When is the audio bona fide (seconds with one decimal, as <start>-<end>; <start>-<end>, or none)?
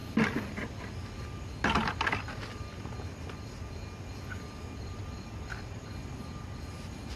0.0-7.2